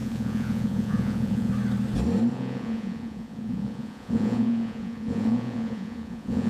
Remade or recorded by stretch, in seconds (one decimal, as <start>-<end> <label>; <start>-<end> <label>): 0.0-1.5 remade; 1.5-2.3 recorded; 2.3-6.5 remade